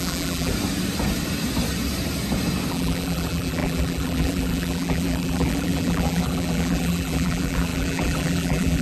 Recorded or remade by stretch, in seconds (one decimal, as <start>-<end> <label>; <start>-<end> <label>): 0.0-0.5 remade; 0.5-2.7 recorded; 2.7-8.8 remade